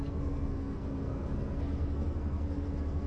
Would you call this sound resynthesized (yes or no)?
yes